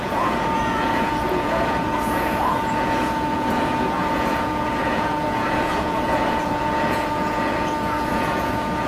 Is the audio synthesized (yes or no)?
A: yes